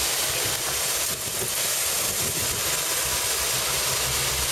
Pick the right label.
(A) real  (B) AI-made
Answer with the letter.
A